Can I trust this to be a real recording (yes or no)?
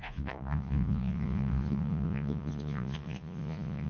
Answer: no